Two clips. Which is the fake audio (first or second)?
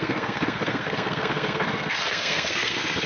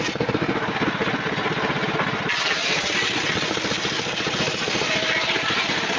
first